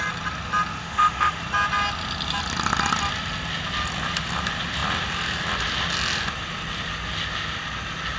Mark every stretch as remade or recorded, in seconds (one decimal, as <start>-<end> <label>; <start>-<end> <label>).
0.0-0.8 recorded; 0.8-1.4 remade; 1.4-8.2 recorded